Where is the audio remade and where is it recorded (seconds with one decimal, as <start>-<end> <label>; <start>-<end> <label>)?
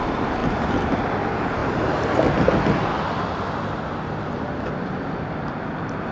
0.0-6.1 recorded